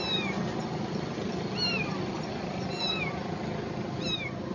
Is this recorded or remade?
recorded